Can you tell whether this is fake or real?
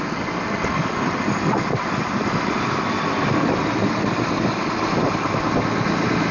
fake